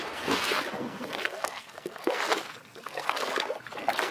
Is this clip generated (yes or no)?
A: yes